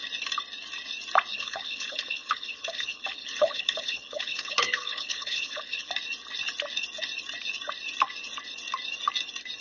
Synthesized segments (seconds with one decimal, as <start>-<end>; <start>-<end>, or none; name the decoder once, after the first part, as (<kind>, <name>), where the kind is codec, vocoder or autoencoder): 1.3-5.9 (codec, HILCodec)